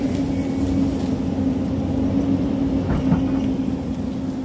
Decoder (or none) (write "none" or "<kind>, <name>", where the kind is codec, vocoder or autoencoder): none